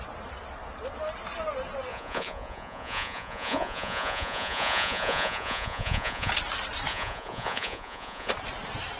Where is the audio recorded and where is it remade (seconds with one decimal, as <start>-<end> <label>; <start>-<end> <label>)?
0.0-1.9 recorded; 1.9-6.3 remade; 6.3-6.9 recorded; 6.9-8.3 remade; 8.3-9.0 recorded